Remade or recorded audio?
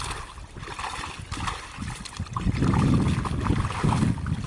recorded